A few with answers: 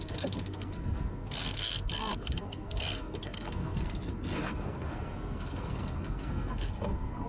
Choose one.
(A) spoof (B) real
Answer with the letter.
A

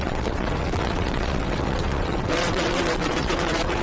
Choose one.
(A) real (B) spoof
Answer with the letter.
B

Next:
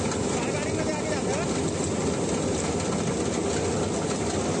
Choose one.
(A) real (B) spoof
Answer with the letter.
A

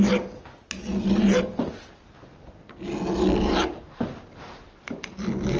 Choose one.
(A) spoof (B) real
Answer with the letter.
B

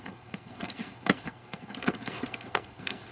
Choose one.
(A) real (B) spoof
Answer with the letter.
B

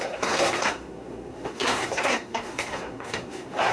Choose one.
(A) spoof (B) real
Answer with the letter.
A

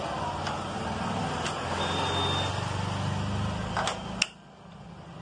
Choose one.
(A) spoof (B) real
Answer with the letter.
B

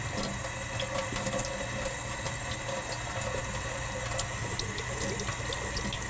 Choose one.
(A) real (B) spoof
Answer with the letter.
A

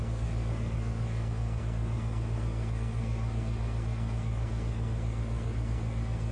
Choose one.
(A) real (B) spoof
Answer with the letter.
B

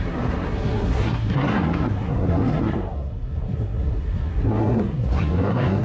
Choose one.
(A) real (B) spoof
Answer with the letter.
B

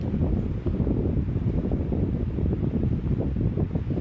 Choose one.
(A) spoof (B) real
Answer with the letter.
B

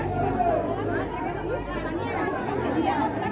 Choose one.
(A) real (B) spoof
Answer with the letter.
A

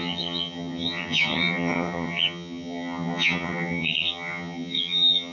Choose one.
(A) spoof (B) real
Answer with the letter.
A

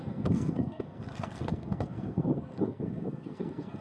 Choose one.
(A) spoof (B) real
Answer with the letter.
A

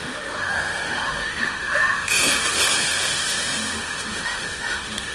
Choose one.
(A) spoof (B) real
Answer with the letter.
A